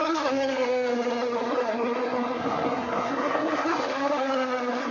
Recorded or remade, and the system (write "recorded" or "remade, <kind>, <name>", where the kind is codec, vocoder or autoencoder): remade, codec, SNAC